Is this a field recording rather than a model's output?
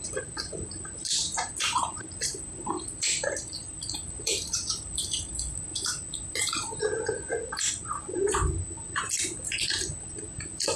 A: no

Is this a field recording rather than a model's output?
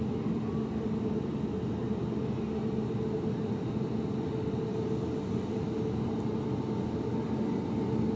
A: yes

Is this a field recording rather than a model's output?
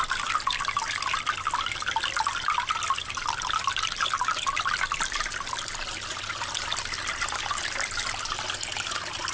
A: yes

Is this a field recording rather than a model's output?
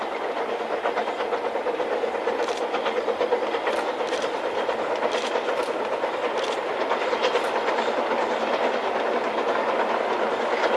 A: yes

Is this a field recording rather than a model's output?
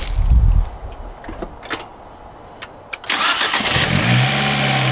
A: yes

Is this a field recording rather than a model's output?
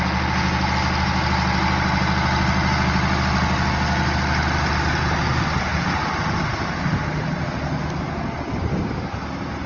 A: yes